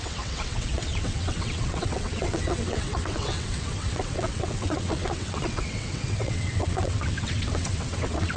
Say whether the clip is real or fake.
fake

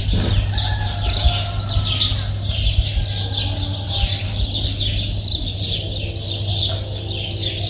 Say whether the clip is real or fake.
real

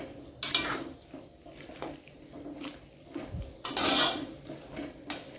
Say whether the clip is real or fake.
real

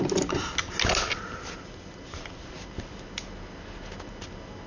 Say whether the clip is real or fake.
real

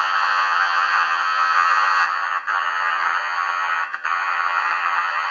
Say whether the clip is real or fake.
fake